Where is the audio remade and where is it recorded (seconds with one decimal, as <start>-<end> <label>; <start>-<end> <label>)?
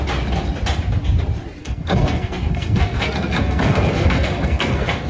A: 0.0-1.6 recorded; 1.6-5.1 remade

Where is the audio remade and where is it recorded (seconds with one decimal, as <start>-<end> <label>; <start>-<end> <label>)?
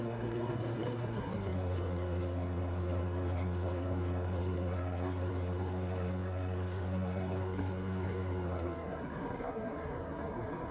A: 0.0-10.7 remade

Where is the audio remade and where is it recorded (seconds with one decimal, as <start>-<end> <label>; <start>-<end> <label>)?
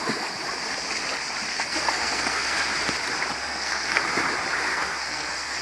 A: 0.0-1.5 recorded; 1.5-2.7 remade; 2.7-3.4 recorded; 3.4-4.0 remade; 4.0-4.7 recorded; 4.7-5.6 remade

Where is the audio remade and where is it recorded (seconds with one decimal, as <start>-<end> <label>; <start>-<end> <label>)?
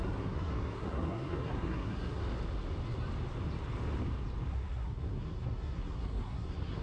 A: 0.0-2.2 remade; 2.2-4.5 recorded; 4.5-6.8 remade